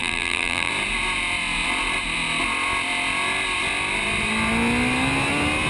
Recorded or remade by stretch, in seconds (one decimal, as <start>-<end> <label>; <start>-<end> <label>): 0.0-0.7 remade; 0.7-5.7 recorded